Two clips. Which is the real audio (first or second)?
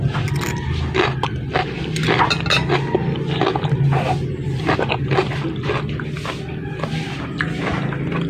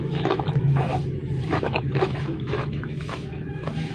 first